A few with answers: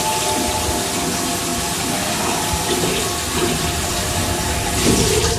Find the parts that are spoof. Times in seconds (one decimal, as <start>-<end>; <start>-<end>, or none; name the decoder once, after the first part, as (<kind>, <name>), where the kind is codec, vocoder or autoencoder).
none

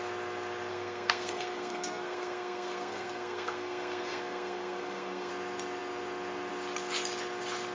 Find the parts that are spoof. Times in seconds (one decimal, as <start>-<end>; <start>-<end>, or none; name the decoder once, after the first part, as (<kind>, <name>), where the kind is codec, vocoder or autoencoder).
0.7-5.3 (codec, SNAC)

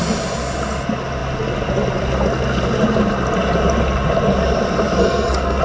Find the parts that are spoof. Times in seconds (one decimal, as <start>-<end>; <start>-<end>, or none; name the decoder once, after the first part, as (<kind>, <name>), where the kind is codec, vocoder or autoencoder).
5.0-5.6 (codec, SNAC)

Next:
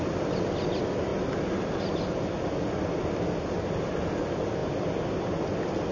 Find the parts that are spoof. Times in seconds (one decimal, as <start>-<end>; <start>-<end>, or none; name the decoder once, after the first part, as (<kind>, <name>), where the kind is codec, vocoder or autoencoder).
none